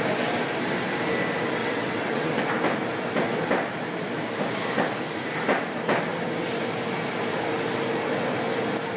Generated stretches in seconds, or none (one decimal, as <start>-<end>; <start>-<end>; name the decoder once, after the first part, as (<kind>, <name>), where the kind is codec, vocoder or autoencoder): 1.6-2.4 (vocoder, WaveNeXt)